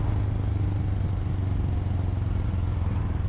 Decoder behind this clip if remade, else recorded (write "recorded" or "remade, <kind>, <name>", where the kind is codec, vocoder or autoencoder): recorded